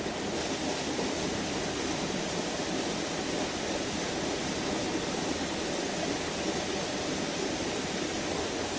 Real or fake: real